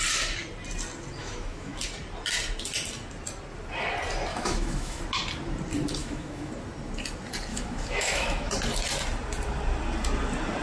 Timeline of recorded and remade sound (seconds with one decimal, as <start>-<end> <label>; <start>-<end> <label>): 0.0-1.2 recorded; 1.2-1.8 remade; 1.8-4.3 recorded; 4.3-5.0 remade; 5.0-6.0 recorded; 6.0-6.5 remade; 6.5-7.5 recorded; 7.5-8.5 remade; 8.5-10.6 recorded